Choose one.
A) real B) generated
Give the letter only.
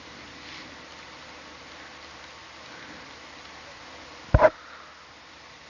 A